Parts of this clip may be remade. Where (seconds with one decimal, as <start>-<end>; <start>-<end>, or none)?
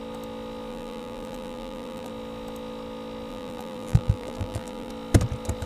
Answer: 0.7-2.1; 3.3-4.9